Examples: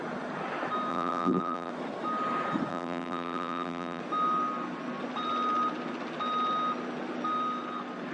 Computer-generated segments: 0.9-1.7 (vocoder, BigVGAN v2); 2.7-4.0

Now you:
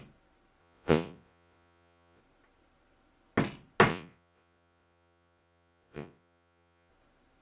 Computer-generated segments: 0.6-2.2 (vocoder, Vocos); 3.9-6.9

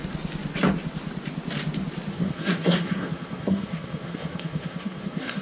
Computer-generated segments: 2.1-5.4 (codec, SNAC)